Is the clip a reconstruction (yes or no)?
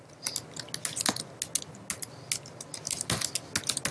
no